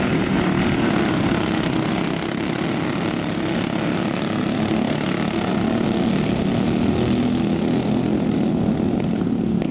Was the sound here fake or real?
real